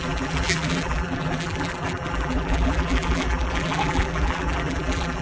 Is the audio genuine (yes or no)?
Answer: no